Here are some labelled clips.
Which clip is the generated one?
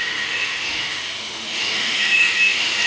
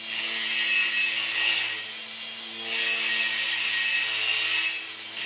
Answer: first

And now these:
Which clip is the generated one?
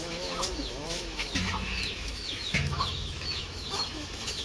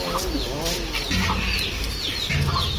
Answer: first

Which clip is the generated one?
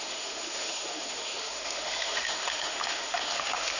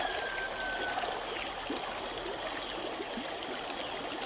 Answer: first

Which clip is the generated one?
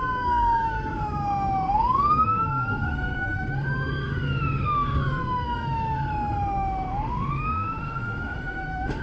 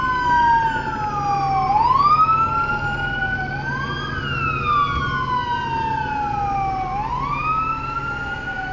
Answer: first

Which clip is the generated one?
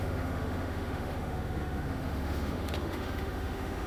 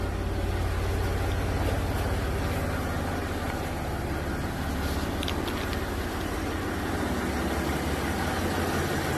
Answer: first